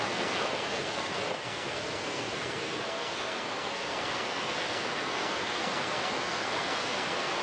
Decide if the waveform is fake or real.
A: fake